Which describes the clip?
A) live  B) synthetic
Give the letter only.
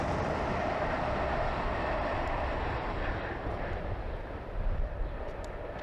B